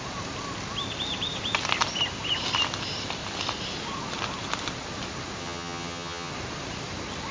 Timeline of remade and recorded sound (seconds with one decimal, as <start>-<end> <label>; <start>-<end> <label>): 0.0-5.4 recorded; 5.4-6.3 remade; 6.3-7.3 recorded